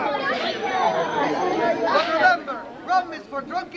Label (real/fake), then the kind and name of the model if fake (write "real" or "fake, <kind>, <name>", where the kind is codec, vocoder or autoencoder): real